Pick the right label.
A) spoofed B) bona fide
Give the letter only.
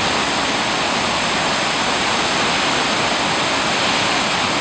B